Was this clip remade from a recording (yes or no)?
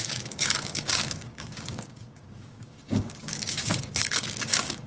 yes